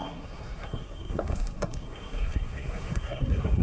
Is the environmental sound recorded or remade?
remade